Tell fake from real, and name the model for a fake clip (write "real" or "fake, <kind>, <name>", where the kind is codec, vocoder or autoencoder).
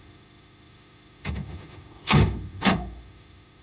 fake, autoencoder, DAC-VAE